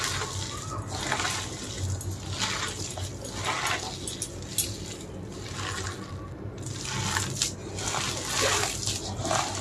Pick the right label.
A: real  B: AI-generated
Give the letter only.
A